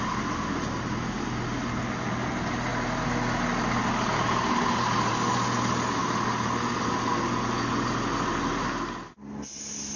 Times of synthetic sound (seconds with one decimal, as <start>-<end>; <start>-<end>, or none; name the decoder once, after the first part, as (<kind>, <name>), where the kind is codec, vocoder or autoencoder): none